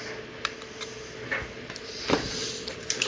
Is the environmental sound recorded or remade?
remade